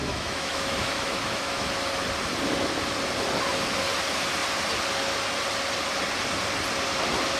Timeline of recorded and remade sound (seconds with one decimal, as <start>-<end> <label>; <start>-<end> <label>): 0.0-1.7 remade; 1.7-7.4 recorded